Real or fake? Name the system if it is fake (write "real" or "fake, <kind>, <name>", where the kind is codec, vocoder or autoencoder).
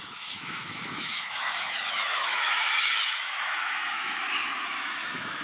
fake, autoencoder, DAC-VAE